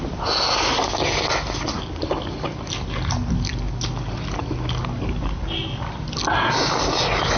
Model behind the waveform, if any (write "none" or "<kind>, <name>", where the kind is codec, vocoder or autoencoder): none